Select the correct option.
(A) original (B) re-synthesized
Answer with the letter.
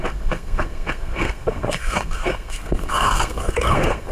B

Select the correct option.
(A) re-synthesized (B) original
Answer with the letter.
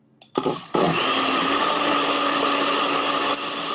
B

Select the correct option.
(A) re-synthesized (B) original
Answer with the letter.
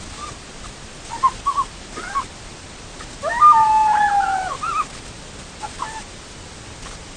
B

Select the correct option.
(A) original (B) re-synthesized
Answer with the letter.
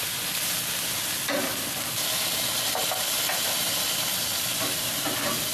A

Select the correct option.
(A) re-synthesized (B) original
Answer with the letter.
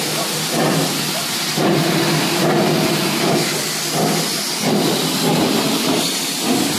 B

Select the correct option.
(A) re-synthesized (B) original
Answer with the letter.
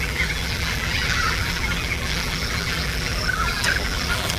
A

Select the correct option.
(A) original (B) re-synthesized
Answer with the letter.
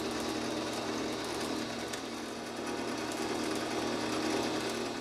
A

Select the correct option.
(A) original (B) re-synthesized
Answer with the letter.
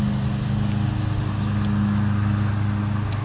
A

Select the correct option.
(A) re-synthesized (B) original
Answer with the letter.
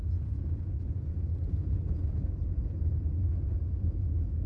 A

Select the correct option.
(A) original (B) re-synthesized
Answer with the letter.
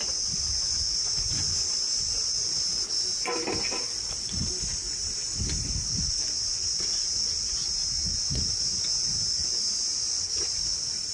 A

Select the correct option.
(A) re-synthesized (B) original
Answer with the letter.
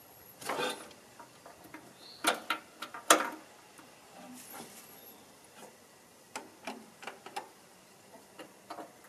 B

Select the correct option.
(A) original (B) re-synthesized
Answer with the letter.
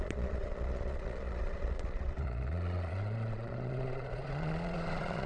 B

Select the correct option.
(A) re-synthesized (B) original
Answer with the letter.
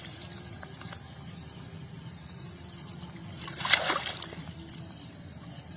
A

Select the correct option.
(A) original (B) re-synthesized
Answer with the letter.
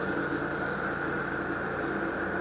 A